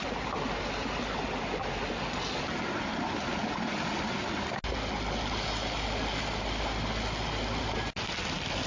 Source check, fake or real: real